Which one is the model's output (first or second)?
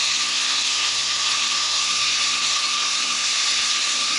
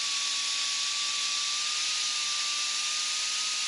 first